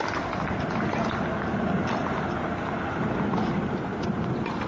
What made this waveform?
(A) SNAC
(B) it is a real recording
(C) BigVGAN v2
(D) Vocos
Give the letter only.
B